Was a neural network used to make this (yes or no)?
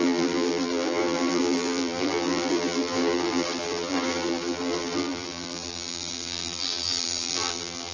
yes